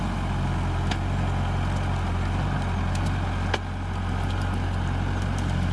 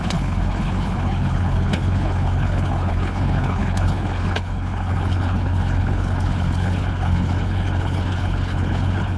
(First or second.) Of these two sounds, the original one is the first